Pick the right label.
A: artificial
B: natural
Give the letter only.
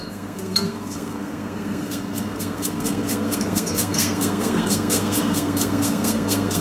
A